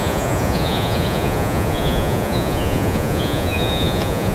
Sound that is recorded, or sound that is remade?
remade